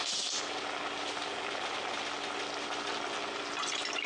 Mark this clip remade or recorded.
recorded